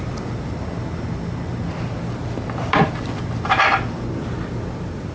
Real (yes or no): yes